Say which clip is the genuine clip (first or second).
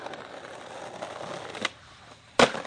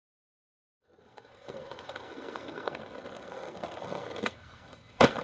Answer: first